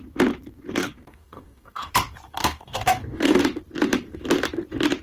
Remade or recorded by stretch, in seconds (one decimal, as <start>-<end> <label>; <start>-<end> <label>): 0.0-0.8 recorded; 0.8-1.9 remade; 1.9-2.4 recorded; 2.4-3.4 remade; 3.4-5.0 recorded